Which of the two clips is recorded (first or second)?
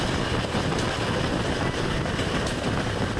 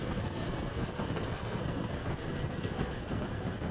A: first